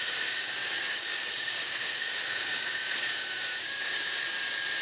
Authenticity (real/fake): fake